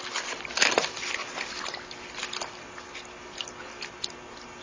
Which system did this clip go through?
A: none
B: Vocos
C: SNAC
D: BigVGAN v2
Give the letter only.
A